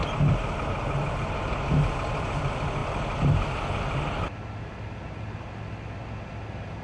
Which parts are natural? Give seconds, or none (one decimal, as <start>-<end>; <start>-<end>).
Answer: 0.0-6.8